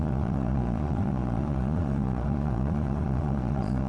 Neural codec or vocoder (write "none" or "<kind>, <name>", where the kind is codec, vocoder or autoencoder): vocoder, Vocos